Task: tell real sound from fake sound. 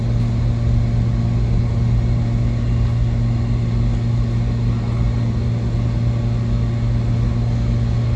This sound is real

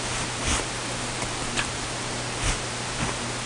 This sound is real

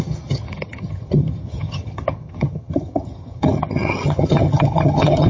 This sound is fake